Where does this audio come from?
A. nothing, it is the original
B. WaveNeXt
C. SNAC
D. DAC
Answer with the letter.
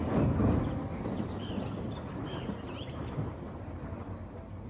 A